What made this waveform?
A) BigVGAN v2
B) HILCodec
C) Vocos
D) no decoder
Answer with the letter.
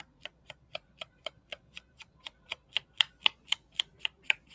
C